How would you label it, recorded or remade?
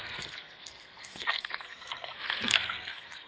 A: remade